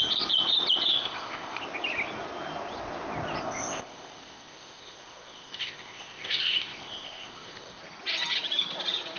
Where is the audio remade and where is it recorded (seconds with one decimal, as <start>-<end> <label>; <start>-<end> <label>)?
0.0-0.9 recorded; 0.9-1.6 remade; 1.6-3.4 recorded; 3.4-7.8 remade; 7.8-9.2 recorded